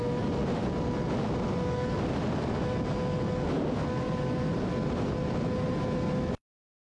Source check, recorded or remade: recorded